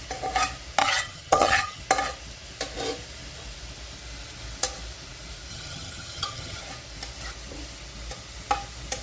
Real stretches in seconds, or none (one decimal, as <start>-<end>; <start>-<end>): 0.0-0.8; 1.8-5.5; 6.6-9.0